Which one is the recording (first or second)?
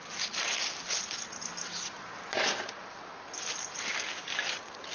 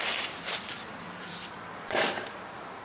first